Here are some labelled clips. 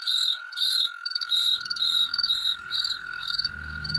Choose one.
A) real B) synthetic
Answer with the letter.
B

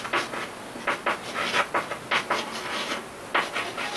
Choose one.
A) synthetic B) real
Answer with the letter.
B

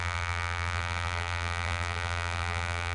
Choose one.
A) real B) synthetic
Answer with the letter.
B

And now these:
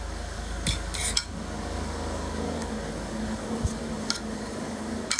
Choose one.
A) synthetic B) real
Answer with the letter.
A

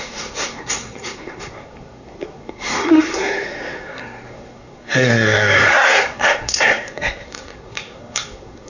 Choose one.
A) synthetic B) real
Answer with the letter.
A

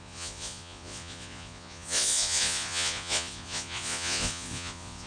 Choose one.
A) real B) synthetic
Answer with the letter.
B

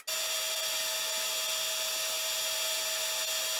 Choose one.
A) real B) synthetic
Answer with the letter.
A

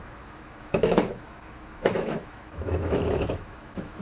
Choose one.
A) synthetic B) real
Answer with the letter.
A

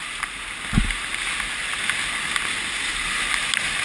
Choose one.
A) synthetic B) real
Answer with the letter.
B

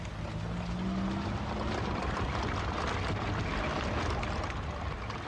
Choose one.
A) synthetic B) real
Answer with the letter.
B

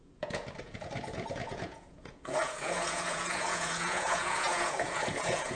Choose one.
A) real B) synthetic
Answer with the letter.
B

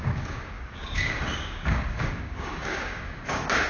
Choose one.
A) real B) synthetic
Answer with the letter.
B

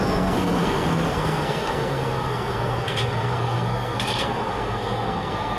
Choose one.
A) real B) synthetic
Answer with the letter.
B